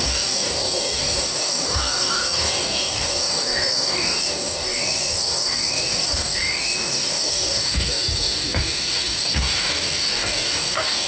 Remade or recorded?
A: remade